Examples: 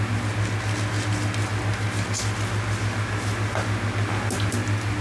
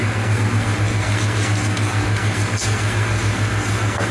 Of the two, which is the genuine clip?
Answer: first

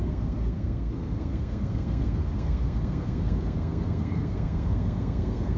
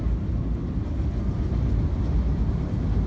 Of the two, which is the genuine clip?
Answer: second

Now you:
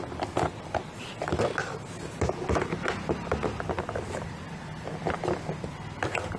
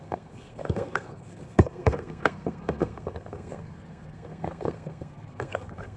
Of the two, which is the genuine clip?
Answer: first